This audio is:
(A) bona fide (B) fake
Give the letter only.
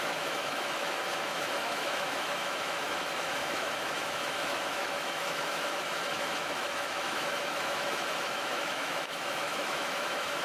B